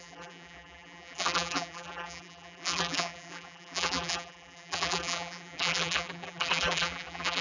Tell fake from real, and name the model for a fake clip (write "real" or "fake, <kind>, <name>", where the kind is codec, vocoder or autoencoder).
fake, vocoder, BigVGAN v2